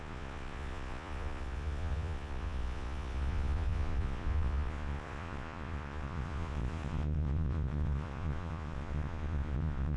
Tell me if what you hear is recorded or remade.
remade